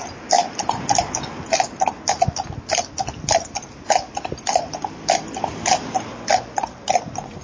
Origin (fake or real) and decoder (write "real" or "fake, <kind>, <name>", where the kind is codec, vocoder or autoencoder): real